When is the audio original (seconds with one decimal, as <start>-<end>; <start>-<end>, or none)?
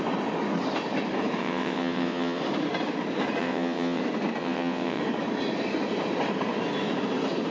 0.0-1.4; 2.4-3.4; 4.0-4.4; 5.0-7.5